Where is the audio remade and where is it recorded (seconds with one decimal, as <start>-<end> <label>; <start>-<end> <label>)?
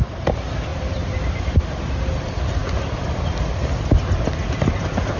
0.0-0.7 recorded; 0.7-1.6 remade; 1.6-2.6 recorded; 2.6-3.8 remade; 3.8-5.2 recorded